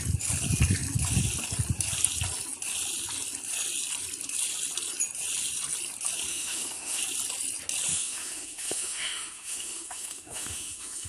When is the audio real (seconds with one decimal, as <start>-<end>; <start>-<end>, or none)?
0.0-6.3; 7.0-7.9